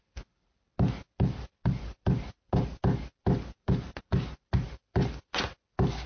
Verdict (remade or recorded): recorded